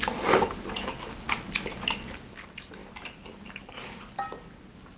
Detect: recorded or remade recorded